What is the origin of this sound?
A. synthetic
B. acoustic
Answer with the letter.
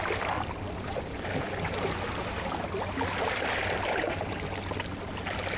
B